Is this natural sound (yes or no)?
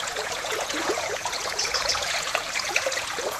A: no